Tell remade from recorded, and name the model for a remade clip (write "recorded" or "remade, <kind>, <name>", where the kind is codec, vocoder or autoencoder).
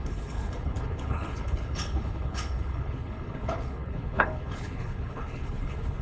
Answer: remade, codec, HILCodec